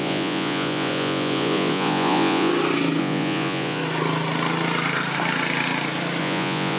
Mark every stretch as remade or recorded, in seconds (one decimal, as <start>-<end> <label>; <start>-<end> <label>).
0.0-2.5 remade; 2.5-3.0 recorded; 3.0-3.8 remade; 3.8-6.2 recorded; 6.2-6.8 remade